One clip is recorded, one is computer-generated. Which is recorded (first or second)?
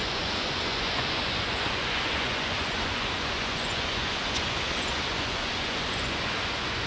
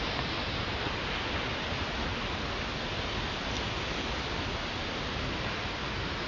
second